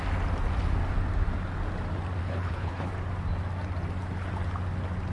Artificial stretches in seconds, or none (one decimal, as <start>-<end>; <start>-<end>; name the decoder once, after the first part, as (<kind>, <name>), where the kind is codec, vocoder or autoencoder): 2.2-2.9 (codec, HILCodec)